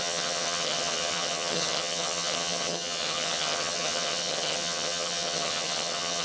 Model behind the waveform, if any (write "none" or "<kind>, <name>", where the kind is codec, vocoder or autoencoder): vocoder, HiFi-GAN